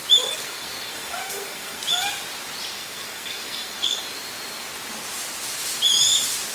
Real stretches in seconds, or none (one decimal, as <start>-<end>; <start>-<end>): 0.0-0.4; 1.8-2.7; 4.0-6.5